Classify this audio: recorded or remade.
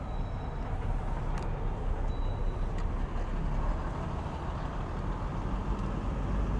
recorded